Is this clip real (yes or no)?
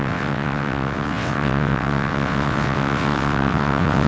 no